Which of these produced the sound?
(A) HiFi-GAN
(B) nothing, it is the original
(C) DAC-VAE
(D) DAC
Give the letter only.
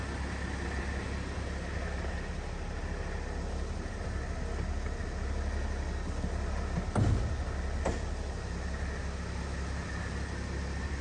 B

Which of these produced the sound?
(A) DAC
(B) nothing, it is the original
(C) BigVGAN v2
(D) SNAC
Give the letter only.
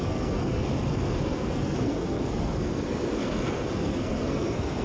D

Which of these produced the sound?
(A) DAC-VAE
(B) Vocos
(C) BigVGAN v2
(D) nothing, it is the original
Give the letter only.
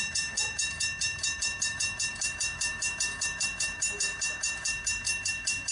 A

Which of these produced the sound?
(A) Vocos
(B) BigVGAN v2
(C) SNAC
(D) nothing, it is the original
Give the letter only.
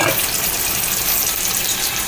D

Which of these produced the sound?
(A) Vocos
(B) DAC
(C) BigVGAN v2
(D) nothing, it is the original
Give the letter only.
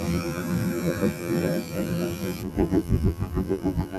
C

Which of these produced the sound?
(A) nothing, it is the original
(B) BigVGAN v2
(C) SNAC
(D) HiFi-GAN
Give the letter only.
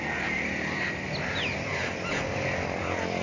B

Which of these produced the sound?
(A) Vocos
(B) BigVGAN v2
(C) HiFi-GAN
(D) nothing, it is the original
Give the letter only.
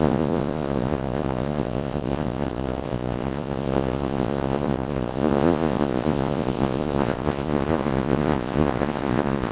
A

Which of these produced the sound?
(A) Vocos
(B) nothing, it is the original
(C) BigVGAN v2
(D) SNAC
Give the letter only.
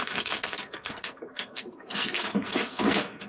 D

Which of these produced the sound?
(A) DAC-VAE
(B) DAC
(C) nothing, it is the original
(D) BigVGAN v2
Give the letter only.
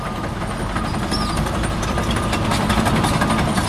C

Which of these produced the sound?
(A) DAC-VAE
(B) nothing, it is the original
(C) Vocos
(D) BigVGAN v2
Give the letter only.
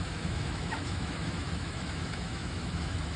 A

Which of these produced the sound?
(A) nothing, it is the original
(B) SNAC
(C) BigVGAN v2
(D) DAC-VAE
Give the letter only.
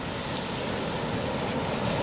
A